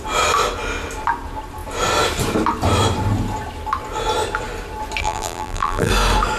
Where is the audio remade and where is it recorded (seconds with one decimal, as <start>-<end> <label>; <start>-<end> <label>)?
0.0-5.0 recorded; 5.0-5.9 remade; 5.9-6.4 recorded